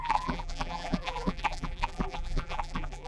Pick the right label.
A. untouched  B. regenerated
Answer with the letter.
B